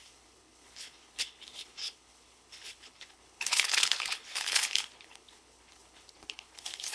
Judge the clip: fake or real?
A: fake